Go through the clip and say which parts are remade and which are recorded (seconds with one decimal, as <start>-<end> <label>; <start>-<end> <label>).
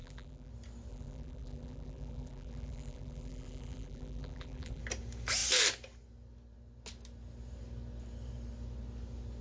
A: 0.0-0.5 remade; 0.5-0.9 recorded; 0.9-4.8 remade; 4.8-9.4 recorded